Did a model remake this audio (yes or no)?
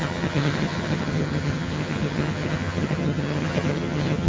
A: yes